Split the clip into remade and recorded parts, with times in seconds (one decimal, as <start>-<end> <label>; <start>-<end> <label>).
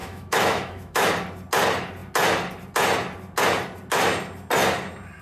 0.0-1.1 remade; 1.1-5.2 recorded